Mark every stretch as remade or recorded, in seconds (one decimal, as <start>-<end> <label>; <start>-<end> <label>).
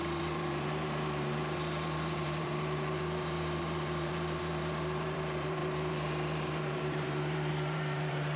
0.0-8.4 remade